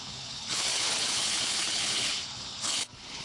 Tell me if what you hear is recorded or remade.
remade